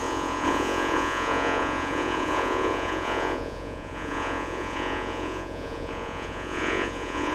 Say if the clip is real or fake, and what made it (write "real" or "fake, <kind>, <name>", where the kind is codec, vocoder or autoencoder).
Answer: fake, vocoder, Vocos